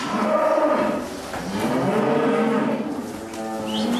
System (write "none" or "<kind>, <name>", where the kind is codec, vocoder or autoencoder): none